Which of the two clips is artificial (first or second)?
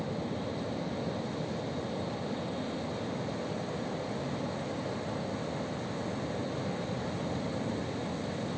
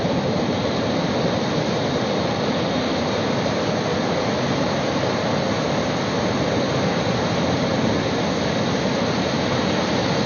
second